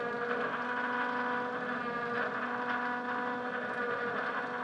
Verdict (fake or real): real